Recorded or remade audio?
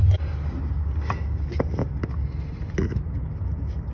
recorded